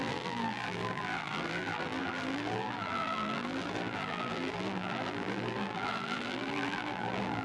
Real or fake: fake